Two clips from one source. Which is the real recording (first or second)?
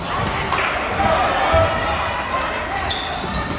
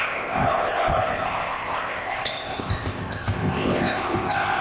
first